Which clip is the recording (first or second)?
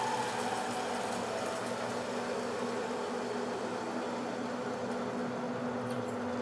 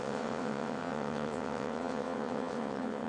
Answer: first